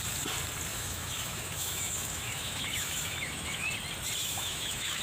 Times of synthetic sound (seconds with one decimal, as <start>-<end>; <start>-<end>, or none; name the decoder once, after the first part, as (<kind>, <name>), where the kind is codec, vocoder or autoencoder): 0.7-3.7 (autoencoder, DAC-VAE); 4.2-5.0